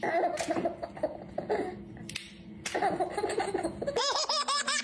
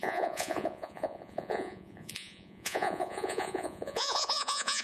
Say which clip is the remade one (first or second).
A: second